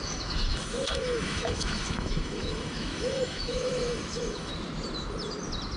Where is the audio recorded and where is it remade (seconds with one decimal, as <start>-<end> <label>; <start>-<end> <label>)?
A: 0.0-4.5 remade; 4.5-5.8 recorded